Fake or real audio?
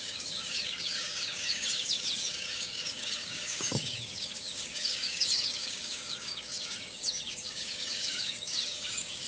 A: fake